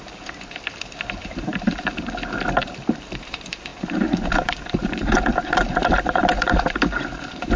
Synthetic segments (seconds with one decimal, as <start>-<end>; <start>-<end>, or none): 0.0-7.6